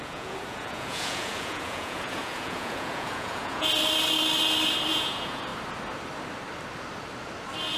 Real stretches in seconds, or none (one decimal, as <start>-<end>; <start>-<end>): 3.7-4.9; 5.5-7.8